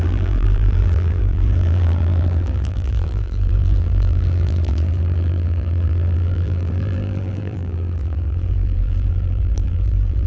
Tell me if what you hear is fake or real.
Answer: fake